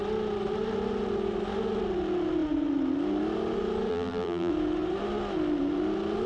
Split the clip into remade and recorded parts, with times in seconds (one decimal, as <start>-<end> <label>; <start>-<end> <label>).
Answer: 0.0-3.9 recorded; 3.9-4.5 remade; 4.5-6.3 recorded